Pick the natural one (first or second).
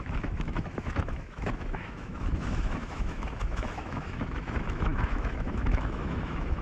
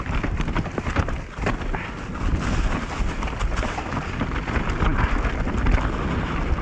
second